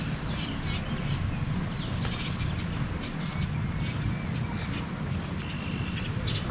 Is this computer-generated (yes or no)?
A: no